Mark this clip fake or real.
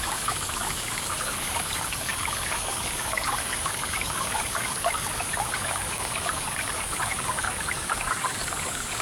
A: fake